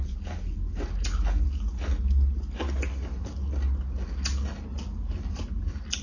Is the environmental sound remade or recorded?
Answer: recorded